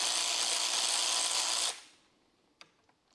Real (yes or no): yes